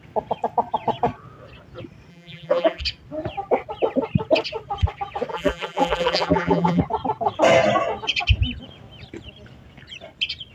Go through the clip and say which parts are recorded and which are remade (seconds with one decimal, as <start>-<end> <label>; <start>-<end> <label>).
0.0-2.1 recorded; 2.1-2.8 remade; 2.8-5.3 recorded; 5.3-6.8 remade; 6.8-10.5 recorded